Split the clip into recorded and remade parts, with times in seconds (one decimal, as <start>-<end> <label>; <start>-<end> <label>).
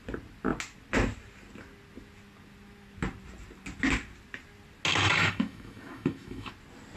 0.0-4.9 recorded; 4.9-6.5 remade; 6.5-7.0 recorded